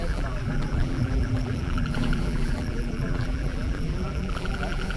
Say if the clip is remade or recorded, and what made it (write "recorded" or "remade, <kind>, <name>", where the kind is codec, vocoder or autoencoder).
remade, vocoder, BigVGAN v2